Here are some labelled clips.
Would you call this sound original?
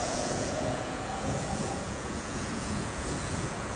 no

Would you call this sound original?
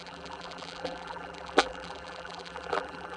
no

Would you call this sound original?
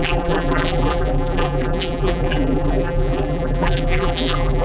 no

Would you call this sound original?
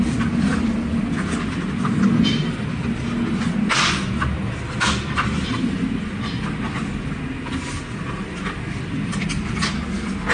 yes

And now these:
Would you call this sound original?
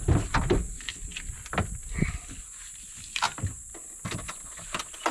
yes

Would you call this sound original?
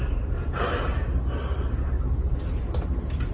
no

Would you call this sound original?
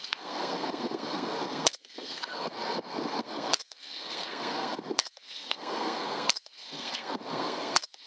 no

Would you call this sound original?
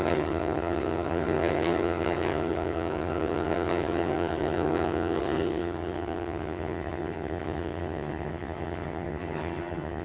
no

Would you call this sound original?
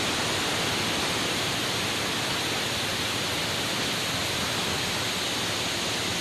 yes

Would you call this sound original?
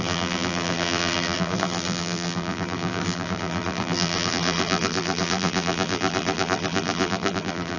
no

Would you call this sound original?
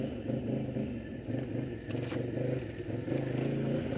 yes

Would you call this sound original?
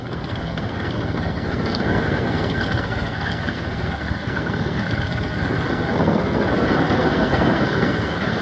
no